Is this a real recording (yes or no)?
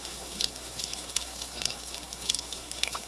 no